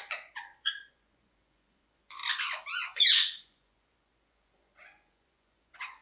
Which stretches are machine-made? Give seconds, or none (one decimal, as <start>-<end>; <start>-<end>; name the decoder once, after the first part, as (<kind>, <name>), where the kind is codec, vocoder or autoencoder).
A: 0.0-2.2 (vocoder, Vocos); 2.8-6.0